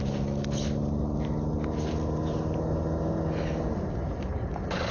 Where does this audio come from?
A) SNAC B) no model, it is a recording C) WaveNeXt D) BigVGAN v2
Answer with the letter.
B